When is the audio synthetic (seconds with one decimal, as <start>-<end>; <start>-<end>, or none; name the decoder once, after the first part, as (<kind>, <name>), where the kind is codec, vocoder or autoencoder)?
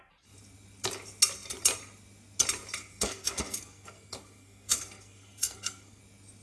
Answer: 2.8-6.0 (codec, SNAC)